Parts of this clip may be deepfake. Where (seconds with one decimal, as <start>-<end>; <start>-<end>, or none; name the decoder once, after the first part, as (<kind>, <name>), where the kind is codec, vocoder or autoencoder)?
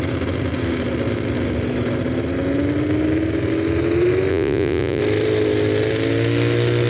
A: 4.3-5.0 (vocoder, Vocos)